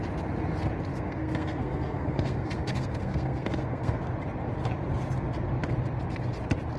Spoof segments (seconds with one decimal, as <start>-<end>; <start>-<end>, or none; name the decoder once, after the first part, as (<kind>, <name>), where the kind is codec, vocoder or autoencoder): 0.9-4.0 (codec, SNAC)